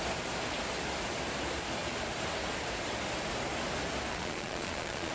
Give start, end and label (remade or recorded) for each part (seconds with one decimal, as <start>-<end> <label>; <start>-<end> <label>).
0.0-4.1 recorded; 4.1-5.1 remade